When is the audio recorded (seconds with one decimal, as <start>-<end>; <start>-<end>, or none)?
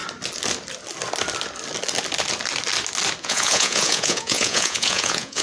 0.0-3.2